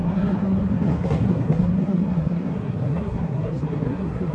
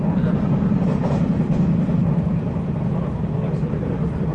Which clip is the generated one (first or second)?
first